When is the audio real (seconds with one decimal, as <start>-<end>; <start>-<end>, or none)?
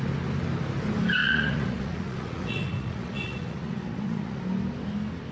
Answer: 0.0-1.2; 4.4-5.3